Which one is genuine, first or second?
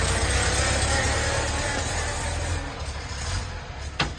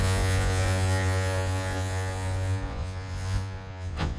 first